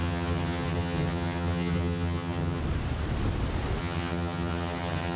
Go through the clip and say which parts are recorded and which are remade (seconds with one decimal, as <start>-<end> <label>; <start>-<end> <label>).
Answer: 0.0-2.6 remade; 2.6-3.8 recorded; 3.8-5.2 remade